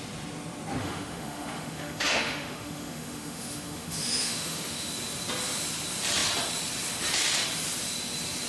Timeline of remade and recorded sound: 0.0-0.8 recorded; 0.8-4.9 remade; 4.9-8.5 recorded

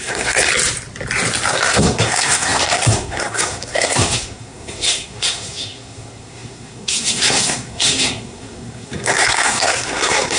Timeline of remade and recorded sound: 0.0-0.5 remade; 0.5-1.5 recorded; 1.5-10.4 remade

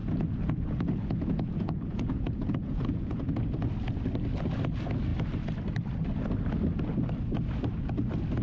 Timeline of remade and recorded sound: 0.0-3.3 remade; 3.3-8.4 recorded

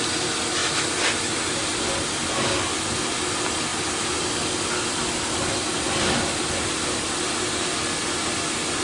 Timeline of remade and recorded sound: 0.0-8.8 recorded